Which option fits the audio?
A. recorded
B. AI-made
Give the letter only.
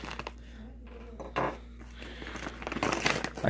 A